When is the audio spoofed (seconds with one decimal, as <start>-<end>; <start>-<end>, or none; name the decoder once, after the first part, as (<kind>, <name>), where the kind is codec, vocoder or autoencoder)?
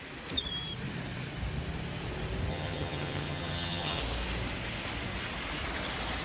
2.5-4.0 (vocoder, HiFi-GAN)